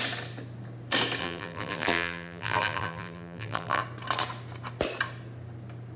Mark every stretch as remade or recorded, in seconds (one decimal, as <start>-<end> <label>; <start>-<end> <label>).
0.0-1.2 recorded; 1.2-3.8 remade; 3.8-6.0 recorded